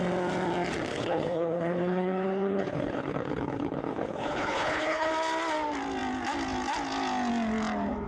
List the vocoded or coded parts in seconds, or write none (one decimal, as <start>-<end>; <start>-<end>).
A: 0.9-5.1

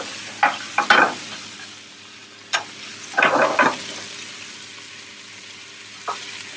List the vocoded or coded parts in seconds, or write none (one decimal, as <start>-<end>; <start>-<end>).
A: none

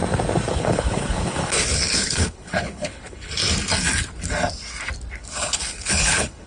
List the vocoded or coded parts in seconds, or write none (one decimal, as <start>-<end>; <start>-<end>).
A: 0.5-3.4; 5.1-6.5

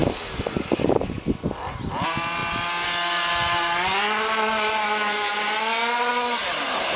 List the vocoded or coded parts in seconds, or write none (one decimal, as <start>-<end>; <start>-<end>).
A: none

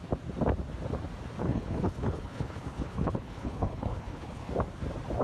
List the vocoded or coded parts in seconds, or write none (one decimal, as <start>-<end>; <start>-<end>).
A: 1.4-4.5

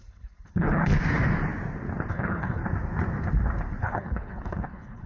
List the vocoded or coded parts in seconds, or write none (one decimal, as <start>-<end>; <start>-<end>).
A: 0.0-0.9; 2.1-2.6; 3.8-5.1

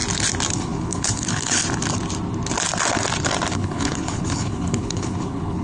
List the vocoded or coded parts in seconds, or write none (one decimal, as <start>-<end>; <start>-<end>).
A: 0.5-1.6; 3.5-5.6